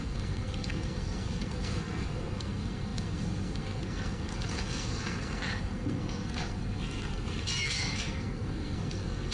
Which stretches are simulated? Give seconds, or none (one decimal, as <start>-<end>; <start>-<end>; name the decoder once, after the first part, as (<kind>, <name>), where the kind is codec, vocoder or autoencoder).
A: 0.0-9.3 (codec, SNAC)